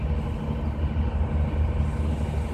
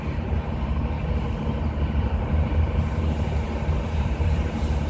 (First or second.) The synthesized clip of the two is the second